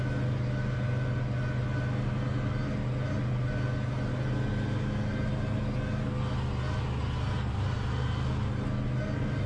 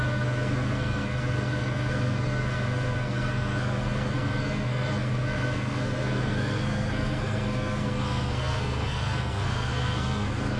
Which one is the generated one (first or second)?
second